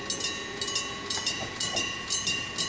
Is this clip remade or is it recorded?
recorded